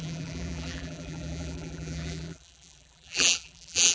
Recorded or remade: remade